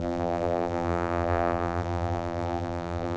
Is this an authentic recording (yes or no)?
no